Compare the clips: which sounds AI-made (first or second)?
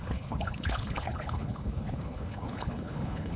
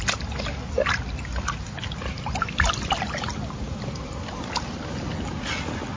first